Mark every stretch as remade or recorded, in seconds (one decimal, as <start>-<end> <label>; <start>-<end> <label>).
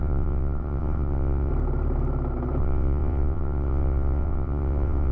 0.0-1.5 remade; 1.5-2.6 recorded; 2.6-5.1 remade